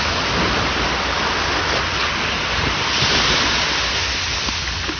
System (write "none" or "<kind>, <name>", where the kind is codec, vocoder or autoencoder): none